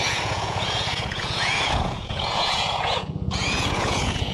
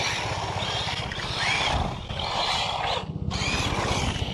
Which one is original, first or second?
second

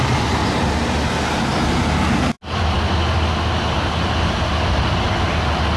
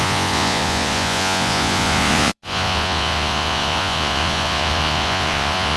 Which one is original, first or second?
first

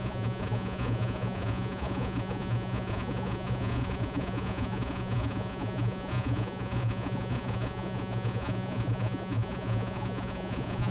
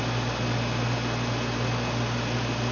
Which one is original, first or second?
second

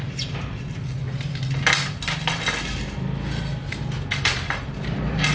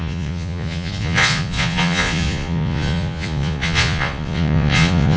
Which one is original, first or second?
first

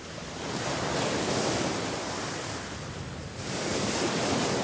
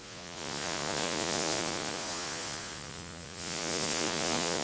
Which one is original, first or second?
first